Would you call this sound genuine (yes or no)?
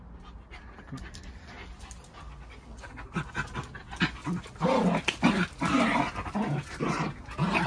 yes